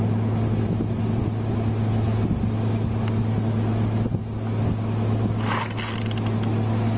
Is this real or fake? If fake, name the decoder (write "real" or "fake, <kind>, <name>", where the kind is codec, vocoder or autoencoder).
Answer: real